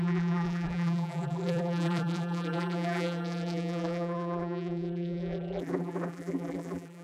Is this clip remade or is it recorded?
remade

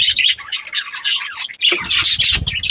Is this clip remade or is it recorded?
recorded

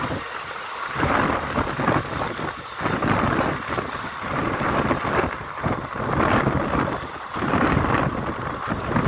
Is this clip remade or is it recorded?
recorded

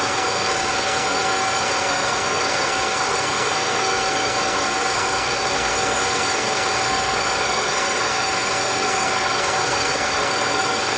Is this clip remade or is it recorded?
remade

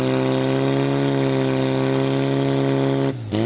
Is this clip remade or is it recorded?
recorded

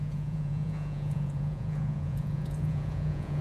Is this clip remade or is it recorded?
remade